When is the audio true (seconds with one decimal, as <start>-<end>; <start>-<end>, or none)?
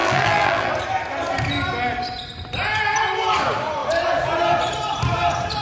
0.7-5.6